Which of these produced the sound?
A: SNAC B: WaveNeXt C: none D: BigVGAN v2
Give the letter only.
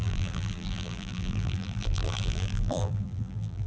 D